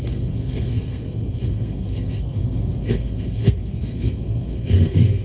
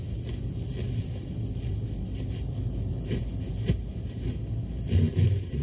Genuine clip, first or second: second